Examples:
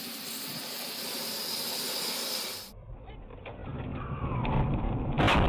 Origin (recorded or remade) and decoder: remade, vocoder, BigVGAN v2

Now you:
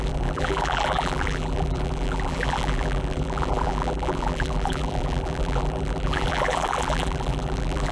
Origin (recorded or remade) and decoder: remade, vocoder, BigVGAN v2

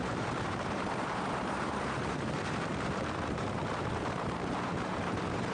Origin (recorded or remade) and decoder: remade, vocoder, BigVGAN v2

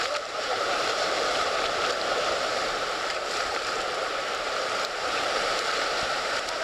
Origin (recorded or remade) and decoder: remade, vocoder, BigVGAN v2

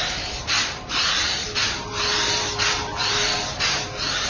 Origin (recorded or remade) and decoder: remade, vocoder, BigVGAN v2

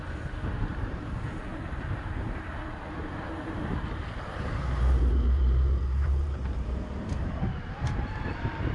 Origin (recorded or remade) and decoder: remade, vocoder, BigVGAN v2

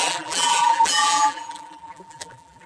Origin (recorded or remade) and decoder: remade, vocoder, BigVGAN v2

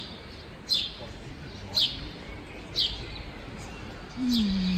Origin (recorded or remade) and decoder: recorded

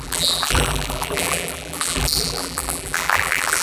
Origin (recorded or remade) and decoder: remade, vocoder, BigVGAN v2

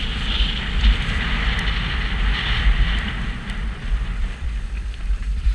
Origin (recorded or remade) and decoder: remade, vocoder, BigVGAN v2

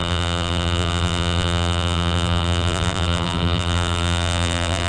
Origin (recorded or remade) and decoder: remade, vocoder, BigVGAN v2